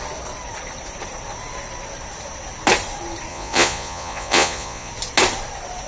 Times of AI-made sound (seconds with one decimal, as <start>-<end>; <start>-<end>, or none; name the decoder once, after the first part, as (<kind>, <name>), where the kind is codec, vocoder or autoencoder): 3.3-4.9 (vocoder, Vocos)